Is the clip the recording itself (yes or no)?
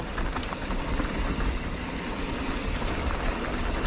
yes